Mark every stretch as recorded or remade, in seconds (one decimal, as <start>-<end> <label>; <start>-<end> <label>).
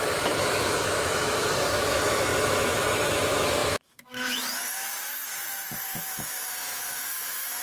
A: 0.0-7.6 remade